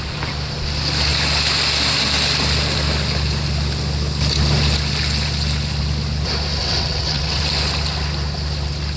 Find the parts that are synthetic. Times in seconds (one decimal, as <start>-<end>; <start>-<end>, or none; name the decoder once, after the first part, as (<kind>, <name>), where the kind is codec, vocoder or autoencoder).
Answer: 6.6-7.4 (vocoder, WaveNeXt)